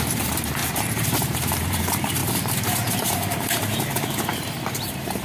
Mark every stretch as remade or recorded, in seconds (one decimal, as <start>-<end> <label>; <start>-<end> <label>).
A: 0.0-5.2 remade